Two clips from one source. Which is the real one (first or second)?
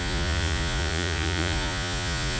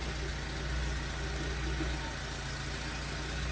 second